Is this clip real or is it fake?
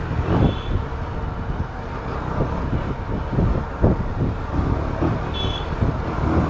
real